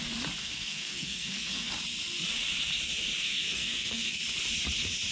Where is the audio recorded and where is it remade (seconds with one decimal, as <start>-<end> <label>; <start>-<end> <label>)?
0.0-0.4 recorded; 0.4-1.7 remade; 1.7-3.2 recorded; 3.2-4.2 remade; 4.2-5.1 recorded